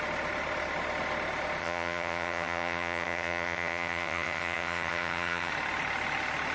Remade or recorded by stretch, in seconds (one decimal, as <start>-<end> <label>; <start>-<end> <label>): 0.0-1.6 recorded; 1.6-5.5 remade; 5.5-6.5 recorded